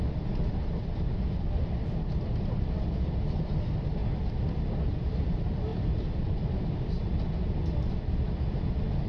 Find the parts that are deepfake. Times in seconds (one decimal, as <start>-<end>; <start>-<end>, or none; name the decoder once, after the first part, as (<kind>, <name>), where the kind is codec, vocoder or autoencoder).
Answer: 5.7-7.1 (vocoder, BigVGAN v2)